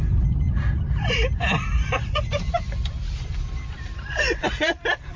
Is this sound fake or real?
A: fake